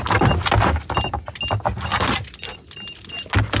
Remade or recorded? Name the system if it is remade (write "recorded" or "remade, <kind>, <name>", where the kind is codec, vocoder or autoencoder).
recorded